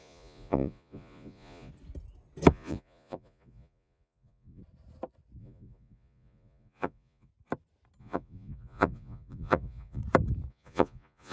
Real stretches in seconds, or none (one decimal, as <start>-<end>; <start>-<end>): 1.7-2.5; 4.6-5.4; 7.3-8.0; 10.0-10.5